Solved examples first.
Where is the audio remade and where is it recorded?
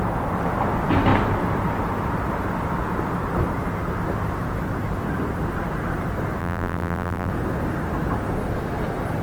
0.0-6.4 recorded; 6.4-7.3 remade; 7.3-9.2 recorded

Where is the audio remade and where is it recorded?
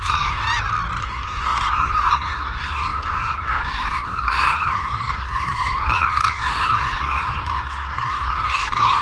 0.0-0.4 remade; 0.4-1.0 recorded; 1.0-9.0 remade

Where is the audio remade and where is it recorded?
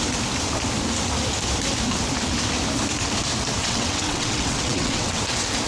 0.0-3.6 recorded; 3.6-5.2 remade; 5.2-5.7 recorded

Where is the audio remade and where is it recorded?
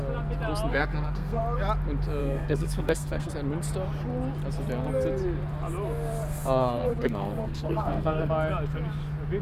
0.0-0.7 recorded; 0.7-1.4 remade; 1.4-2.2 recorded; 2.2-3.3 remade; 3.3-6.3 recorded; 6.3-8.3 remade; 8.3-9.4 recorded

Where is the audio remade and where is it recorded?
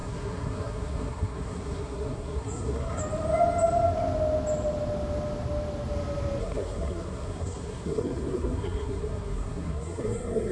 0.0-3.0 remade; 3.0-6.4 recorded; 6.4-10.5 remade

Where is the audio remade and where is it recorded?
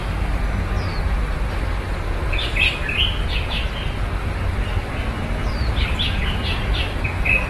0.0-5.4 recorded; 5.4-7.5 remade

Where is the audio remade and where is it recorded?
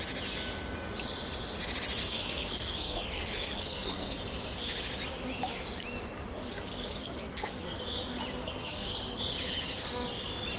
0.0-2.0 recorded; 2.0-4.2 remade; 4.2-6.5 recorded; 6.5-7.8 remade; 7.8-8.4 recorded; 8.4-9.2 remade; 9.2-10.6 recorded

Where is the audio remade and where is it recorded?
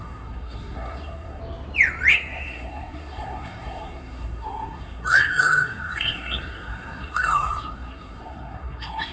0.0-1.4 remade; 1.4-2.1 recorded; 2.1-9.1 remade